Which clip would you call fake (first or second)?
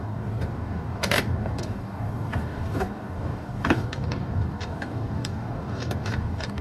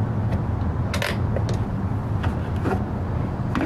first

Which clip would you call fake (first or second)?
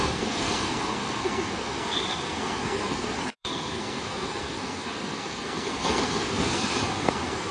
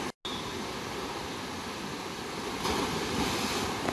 first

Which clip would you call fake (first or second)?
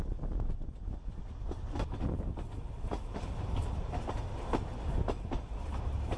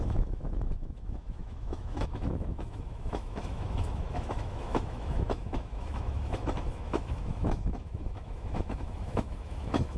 second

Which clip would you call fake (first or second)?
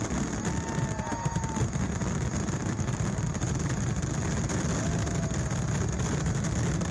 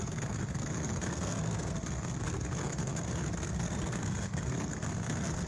second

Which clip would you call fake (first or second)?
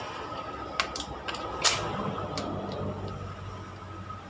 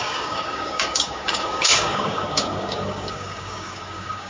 second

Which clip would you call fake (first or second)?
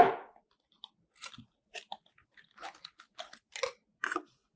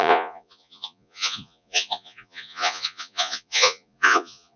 second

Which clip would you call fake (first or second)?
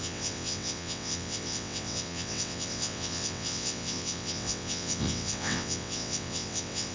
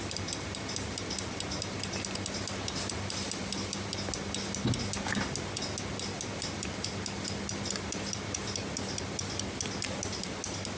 first